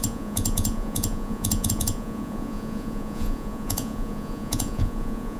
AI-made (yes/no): yes